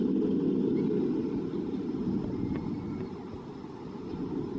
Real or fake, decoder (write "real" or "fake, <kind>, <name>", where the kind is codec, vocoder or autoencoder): real